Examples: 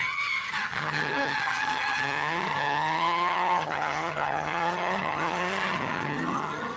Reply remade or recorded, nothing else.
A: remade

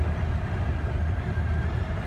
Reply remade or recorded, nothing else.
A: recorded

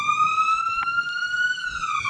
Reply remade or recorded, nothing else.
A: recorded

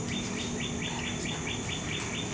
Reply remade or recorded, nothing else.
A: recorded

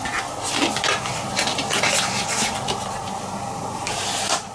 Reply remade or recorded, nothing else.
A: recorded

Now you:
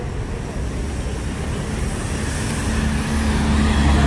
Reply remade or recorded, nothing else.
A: recorded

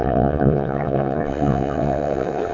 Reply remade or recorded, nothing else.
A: remade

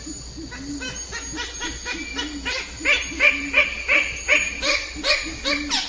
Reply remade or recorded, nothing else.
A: recorded